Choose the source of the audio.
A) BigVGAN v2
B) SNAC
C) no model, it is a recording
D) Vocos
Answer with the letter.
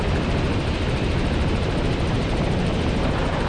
A